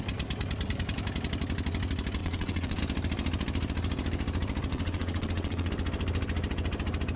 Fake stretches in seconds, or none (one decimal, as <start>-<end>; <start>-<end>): 2.2-2.8; 4.7-5.7